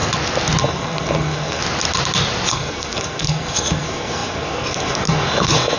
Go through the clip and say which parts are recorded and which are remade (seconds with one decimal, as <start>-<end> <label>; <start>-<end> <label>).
0.0-0.6 recorded; 0.6-1.6 remade; 1.6-2.5 recorded; 2.5-5.8 remade